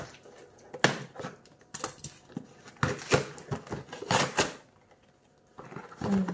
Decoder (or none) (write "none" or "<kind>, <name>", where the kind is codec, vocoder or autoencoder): none